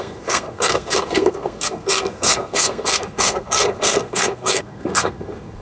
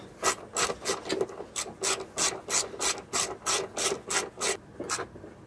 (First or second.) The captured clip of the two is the second